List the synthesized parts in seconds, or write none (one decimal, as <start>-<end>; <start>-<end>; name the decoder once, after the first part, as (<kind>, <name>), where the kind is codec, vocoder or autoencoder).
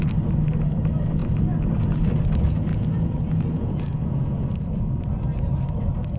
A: 2.7-4.5 (vocoder, Vocos)